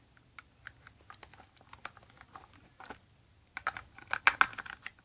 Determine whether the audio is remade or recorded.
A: recorded